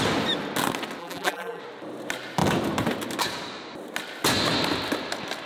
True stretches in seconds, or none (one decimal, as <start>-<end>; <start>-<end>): 0.0-1.0; 1.6-5.5